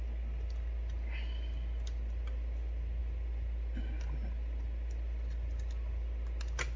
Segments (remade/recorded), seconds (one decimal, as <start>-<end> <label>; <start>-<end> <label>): 0.0-6.8 recorded